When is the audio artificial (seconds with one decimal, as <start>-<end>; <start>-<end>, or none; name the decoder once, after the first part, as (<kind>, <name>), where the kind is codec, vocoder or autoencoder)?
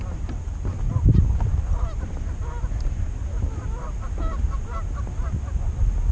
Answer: none